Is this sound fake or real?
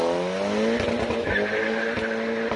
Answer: real